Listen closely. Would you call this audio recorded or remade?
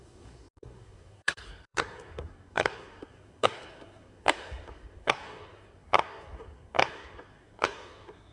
remade